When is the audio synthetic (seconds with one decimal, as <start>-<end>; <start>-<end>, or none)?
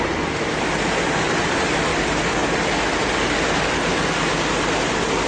none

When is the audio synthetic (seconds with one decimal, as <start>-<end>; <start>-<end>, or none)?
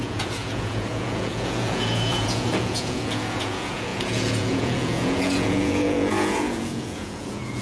0.0-7.6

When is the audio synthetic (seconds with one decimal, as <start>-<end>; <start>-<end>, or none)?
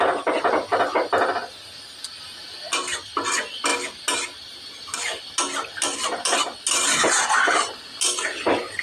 none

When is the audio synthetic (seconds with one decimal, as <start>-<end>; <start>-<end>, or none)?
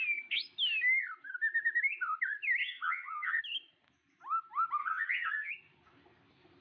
2.6-3.4; 4.8-5.5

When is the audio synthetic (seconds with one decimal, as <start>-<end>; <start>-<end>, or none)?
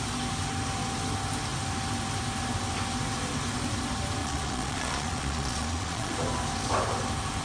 4.2-6.1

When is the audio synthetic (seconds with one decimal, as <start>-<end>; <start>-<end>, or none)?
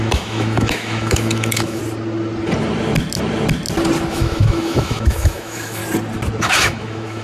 0.0-1.8; 4.1-5.8; 6.4-7.2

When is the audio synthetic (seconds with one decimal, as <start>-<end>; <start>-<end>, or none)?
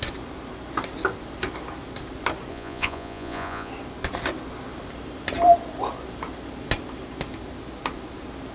2.5-3.7